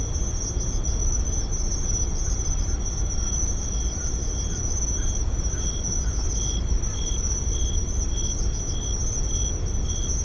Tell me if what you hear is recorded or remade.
recorded